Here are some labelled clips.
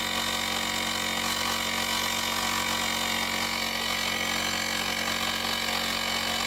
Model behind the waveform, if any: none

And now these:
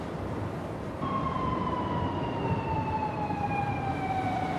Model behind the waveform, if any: vocoder, BigVGAN v2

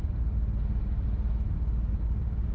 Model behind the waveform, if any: vocoder, BigVGAN v2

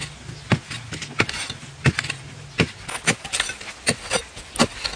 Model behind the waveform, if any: none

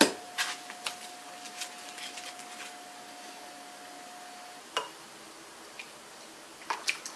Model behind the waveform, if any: none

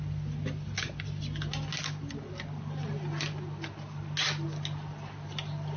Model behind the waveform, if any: none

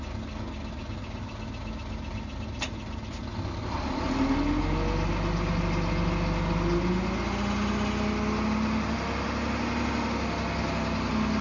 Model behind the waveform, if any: none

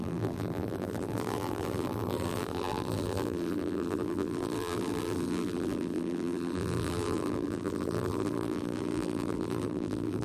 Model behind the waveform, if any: vocoder, BigVGAN v2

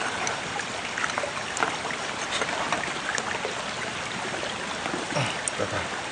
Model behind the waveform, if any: none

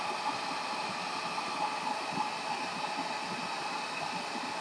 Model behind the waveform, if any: none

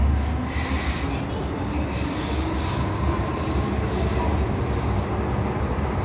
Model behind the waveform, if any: none